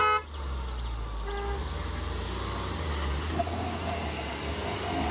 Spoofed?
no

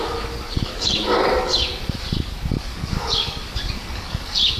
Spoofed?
yes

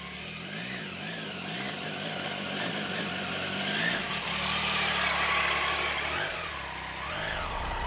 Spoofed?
no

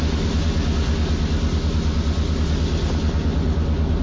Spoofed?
no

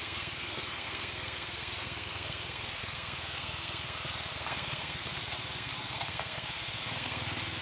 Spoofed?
yes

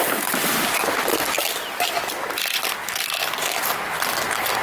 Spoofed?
no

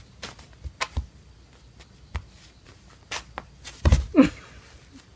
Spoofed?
no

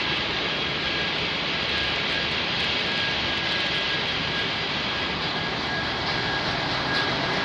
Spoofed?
yes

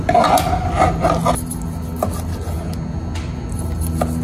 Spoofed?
no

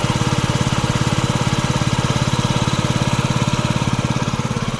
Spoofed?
yes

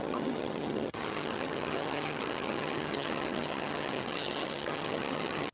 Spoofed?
yes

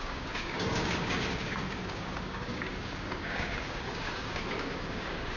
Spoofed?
yes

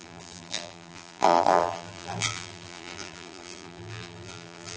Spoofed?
yes